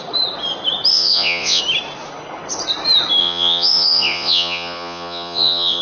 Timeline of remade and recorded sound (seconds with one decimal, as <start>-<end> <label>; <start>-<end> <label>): 0.0-0.9 recorded; 0.9-1.6 remade; 1.6-3.2 recorded; 3.2-5.8 remade